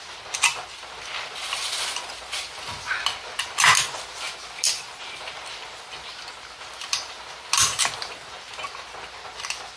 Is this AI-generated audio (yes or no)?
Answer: no